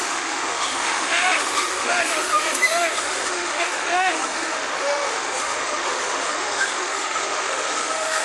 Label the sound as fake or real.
fake